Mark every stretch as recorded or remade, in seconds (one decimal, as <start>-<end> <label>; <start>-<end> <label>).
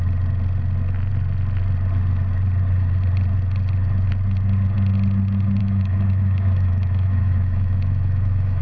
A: 0.0-5.6 recorded; 5.6-8.6 remade